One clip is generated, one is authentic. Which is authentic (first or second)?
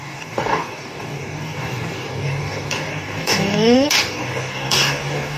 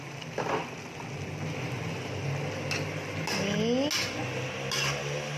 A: second